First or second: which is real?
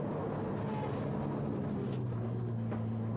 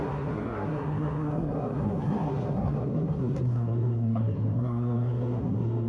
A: first